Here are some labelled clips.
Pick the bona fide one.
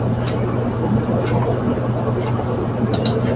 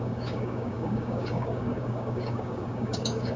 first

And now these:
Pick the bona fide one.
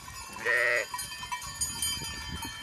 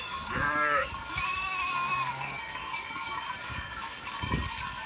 first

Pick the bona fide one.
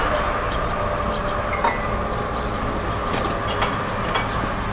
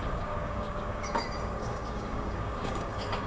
first